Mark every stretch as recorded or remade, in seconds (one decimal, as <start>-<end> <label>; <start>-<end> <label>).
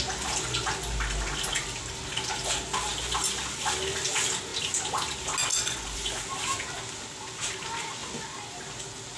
0.0-5.5 recorded; 5.5-6.2 remade; 6.2-9.2 recorded